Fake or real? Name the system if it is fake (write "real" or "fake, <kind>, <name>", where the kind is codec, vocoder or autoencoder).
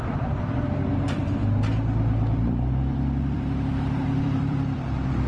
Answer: fake, vocoder, BigVGAN v2